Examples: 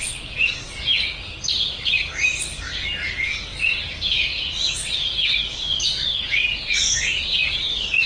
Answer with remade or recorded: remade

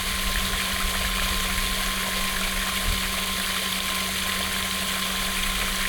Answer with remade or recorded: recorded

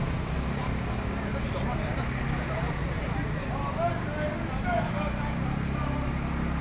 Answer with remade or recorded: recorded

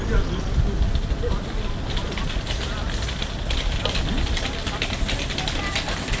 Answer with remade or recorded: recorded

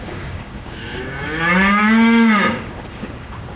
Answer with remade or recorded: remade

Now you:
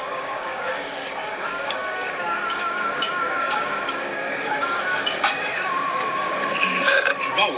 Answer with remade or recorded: remade